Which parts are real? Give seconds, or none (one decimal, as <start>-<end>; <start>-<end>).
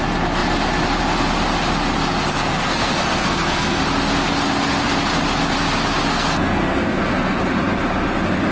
0.0-2.3; 3.8-6.1; 7.4-8.5